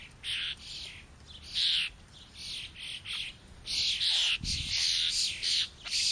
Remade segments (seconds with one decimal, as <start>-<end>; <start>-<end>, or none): none